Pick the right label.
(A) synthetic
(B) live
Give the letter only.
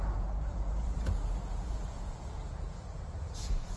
A